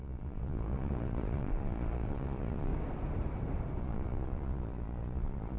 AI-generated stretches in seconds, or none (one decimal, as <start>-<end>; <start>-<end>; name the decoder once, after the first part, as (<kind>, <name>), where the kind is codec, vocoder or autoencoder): 0.0-2.7 (vocoder, Vocos); 3.8-5.6